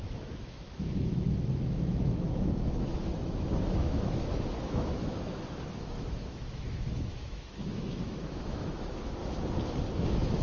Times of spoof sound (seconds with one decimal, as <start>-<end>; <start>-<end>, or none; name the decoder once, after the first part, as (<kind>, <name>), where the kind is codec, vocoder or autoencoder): 0.0-9.2 (autoencoder, DAC-VAE); 10.0-10.4